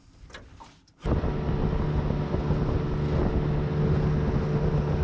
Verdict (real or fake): real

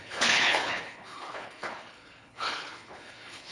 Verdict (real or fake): fake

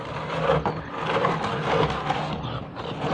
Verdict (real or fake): real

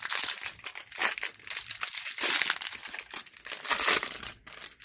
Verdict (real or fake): real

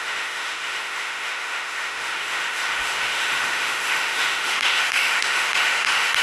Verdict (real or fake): fake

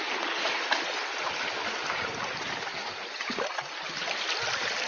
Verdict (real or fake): real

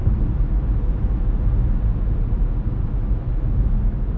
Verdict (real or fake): real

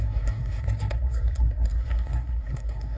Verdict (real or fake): fake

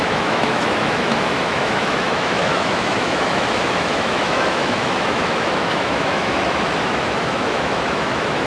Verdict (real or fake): fake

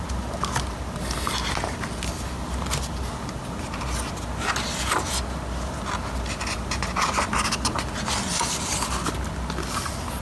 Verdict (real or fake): real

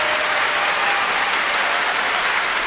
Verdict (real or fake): real